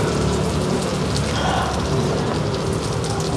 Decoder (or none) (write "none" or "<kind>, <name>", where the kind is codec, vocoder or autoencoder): none